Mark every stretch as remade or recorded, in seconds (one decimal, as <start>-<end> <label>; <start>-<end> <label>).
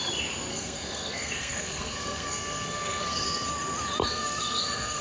0.0-0.5 recorded; 0.5-3.5 remade; 3.5-4.1 recorded; 4.1-5.0 remade